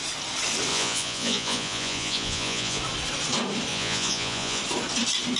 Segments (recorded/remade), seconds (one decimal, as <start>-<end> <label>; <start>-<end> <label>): 0.0-0.7 recorded; 0.7-2.8 remade; 2.8-3.7 recorded; 3.7-4.6 remade; 4.6-5.4 recorded